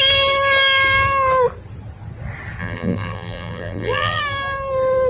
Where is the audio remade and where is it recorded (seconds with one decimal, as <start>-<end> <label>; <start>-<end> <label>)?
0.0-2.6 recorded; 2.6-4.2 remade; 4.2-5.1 recorded